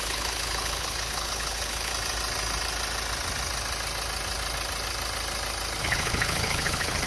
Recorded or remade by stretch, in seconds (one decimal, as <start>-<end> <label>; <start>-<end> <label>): 0.0-1.9 remade; 1.9-5.8 recorded; 5.8-7.1 remade